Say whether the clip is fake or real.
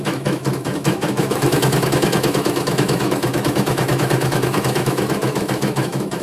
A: fake